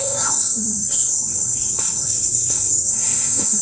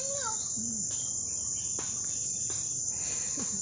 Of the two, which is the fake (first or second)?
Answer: first